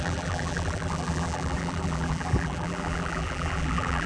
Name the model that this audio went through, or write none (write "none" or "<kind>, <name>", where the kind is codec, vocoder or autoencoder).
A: vocoder, BigVGAN v2